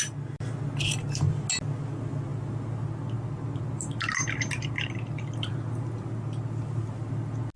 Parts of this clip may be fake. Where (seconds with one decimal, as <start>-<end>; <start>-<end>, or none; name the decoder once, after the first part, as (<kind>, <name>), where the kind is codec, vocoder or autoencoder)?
none